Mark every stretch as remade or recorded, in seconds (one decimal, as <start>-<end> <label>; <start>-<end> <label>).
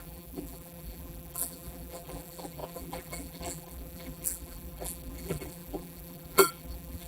0.0-7.1 remade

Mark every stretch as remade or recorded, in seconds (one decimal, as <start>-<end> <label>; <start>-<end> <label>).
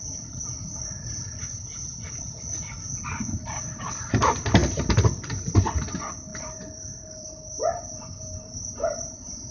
0.0-6.3 recorded; 6.3-9.5 remade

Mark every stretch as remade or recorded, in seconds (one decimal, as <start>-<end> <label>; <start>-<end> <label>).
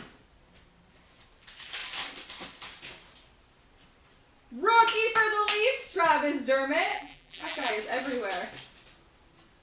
0.0-6.9 recorded; 6.9-7.7 remade; 7.7-9.6 recorded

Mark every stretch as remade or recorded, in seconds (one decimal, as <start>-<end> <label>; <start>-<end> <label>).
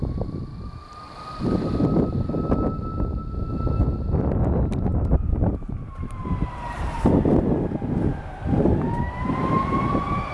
0.0-4.9 recorded; 4.9-7.0 remade; 7.0-10.3 recorded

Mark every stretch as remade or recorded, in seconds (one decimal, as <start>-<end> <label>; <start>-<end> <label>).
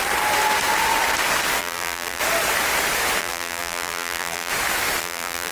0.0-1.6 recorded; 1.6-2.2 remade; 2.2-3.2 recorded; 3.2-4.5 remade; 4.5-5.0 recorded; 5.0-5.5 remade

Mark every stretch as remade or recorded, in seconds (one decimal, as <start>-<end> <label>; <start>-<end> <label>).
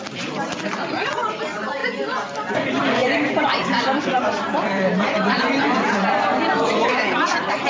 0.0-7.7 remade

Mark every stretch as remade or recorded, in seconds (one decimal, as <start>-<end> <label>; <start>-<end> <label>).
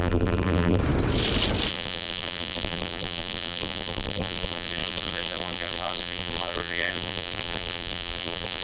0.0-0.8 remade; 0.8-1.7 recorded; 1.7-8.6 remade